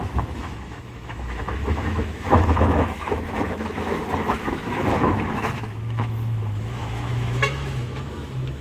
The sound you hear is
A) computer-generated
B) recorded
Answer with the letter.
A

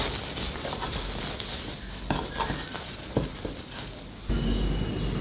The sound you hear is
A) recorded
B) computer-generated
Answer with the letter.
A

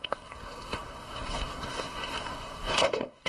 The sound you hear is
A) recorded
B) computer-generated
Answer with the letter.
B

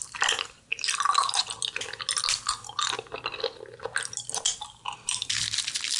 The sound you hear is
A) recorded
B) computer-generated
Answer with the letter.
A